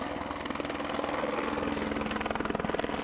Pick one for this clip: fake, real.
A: real